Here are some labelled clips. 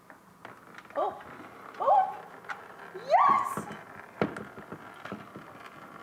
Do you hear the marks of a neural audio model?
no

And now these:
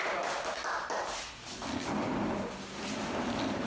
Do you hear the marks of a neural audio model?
no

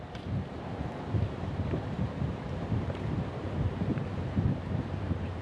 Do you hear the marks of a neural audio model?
yes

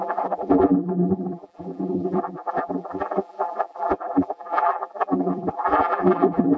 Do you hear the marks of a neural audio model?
yes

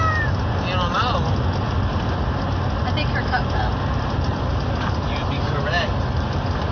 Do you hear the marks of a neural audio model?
no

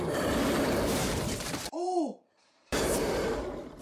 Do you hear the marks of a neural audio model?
yes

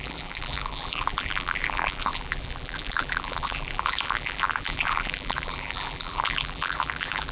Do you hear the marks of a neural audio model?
yes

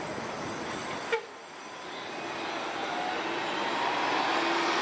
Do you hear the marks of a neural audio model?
no